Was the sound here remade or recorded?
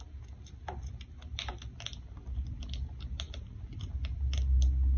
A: recorded